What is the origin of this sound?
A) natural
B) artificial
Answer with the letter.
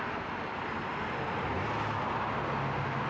A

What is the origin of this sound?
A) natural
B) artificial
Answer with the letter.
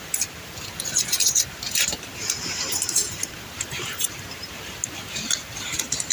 B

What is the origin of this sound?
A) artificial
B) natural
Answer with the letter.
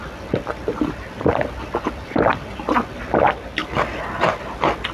A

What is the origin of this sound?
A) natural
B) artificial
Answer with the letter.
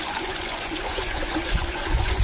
B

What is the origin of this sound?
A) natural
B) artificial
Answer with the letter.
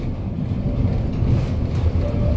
A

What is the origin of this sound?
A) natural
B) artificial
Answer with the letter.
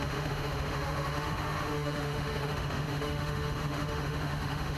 B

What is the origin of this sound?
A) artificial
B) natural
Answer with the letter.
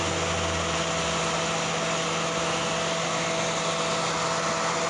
B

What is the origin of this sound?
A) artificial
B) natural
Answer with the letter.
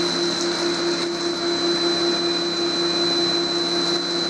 B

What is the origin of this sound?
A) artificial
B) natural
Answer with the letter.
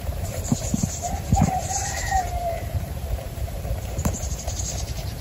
A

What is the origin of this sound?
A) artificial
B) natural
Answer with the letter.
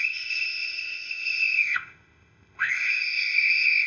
A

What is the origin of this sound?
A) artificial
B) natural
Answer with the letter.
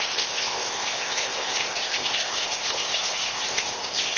A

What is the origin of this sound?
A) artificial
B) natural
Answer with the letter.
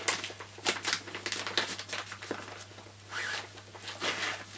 B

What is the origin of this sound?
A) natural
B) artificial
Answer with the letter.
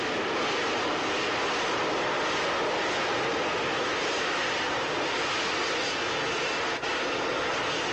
A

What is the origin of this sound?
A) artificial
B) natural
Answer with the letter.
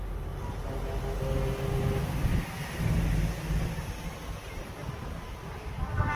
B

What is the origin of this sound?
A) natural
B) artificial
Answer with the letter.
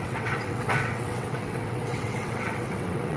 B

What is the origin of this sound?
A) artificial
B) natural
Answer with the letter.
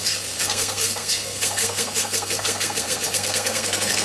A